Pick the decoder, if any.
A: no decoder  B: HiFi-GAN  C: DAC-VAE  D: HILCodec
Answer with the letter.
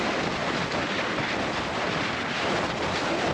A